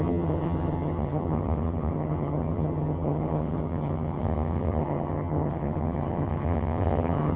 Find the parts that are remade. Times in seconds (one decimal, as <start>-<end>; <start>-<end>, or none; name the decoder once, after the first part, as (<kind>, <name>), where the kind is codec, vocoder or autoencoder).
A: 0.0-7.4 (vocoder, HiFi-GAN)